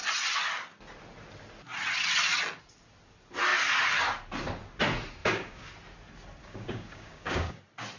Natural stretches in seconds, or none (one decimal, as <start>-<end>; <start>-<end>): 0.0-5.2; 5.7-6.4; 7.6-8.0